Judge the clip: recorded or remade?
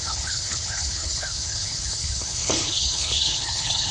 remade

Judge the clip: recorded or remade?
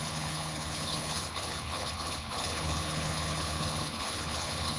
remade